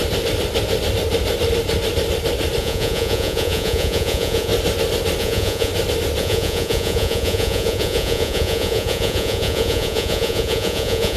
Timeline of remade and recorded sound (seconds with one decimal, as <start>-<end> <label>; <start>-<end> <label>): 0.0-2.6 recorded; 2.6-4.5 remade; 4.5-5.2 recorded; 5.2-5.7 remade; 5.7-6.2 recorded; 6.2-11.2 remade